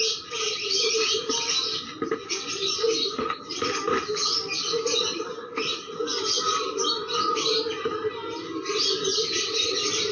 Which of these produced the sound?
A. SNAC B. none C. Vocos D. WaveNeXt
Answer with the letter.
B